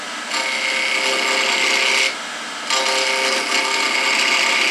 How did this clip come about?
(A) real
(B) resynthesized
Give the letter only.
A